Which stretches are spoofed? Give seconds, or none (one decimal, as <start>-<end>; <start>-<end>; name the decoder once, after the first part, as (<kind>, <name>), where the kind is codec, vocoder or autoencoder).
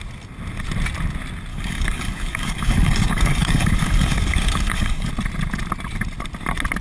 1.5-5.1 (codec, DAC)